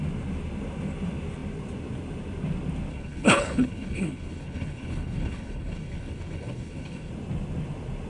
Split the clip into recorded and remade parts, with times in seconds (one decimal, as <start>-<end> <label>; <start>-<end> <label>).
0.0-2.9 recorded; 2.9-7.1 remade; 7.1-8.1 recorded